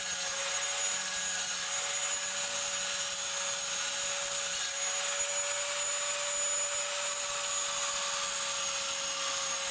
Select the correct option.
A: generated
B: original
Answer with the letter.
B